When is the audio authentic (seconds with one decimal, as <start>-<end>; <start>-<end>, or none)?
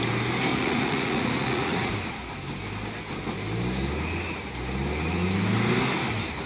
0.0-0.5; 1.9-6.5